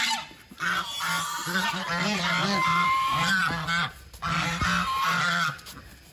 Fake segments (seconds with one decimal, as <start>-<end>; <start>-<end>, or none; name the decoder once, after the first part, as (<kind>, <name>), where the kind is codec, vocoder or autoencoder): 1.4-2.3 (vocoder, BigVGAN v2); 2.7-3.4